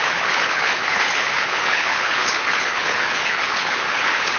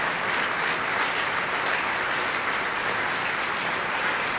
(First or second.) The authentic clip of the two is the second